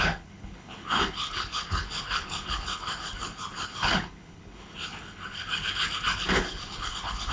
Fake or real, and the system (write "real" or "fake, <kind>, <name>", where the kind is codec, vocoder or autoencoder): fake, codec, HILCodec